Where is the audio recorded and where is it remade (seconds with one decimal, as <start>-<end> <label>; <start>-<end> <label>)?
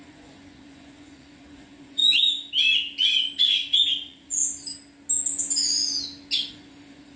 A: 0.0-2.0 remade; 2.0-3.3 recorded; 3.3-4.4 remade; 4.4-6.5 recorded; 6.5-7.2 remade